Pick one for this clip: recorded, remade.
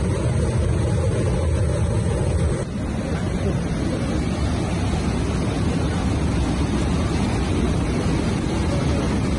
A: recorded